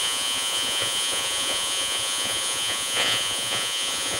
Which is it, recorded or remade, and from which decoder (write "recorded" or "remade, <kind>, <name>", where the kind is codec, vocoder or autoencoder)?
remade, vocoder, Vocos